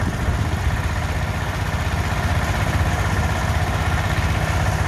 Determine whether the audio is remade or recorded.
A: recorded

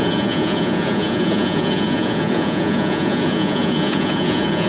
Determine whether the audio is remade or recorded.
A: remade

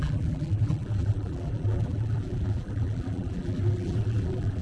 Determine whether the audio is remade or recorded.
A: remade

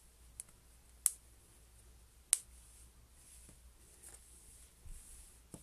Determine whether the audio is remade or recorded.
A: recorded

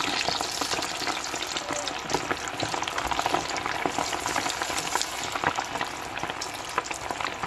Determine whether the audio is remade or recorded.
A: recorded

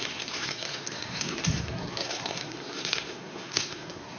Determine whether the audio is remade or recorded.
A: remade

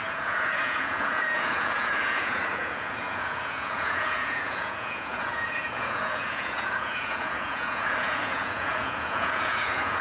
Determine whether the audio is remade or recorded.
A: remade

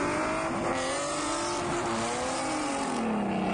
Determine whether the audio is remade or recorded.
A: recorded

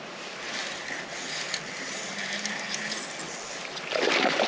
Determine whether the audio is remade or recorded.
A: recorded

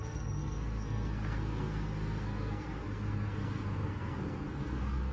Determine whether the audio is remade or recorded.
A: remade